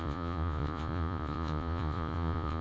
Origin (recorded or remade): remade